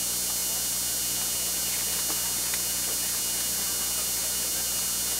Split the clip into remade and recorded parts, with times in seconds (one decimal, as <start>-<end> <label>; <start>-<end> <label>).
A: 0.0-5.2 recorded